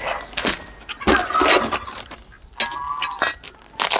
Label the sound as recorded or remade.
recorded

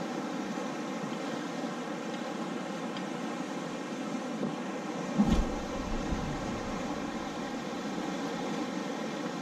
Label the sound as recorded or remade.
recorded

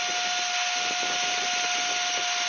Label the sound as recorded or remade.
recorded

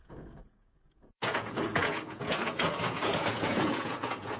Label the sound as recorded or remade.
remade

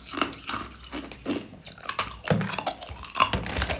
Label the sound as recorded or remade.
recorded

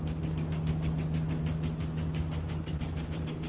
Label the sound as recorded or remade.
recorded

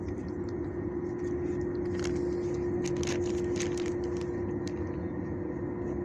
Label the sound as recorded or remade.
recorded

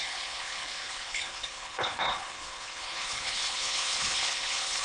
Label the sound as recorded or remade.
remade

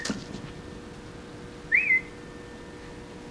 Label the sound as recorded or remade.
recorded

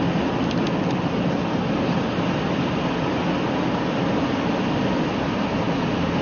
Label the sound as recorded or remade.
recorded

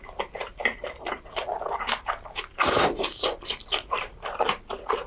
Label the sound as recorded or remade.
remade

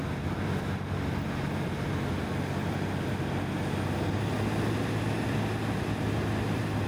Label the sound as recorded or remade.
recorded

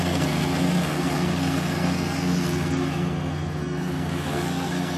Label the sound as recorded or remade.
remade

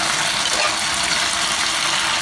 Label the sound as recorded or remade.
recorded